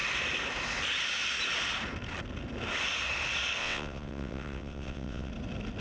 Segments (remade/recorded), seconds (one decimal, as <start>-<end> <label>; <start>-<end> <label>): 0.0-3.6 recorded; 3.6-5.3 remade; 5.3-5.8 recorded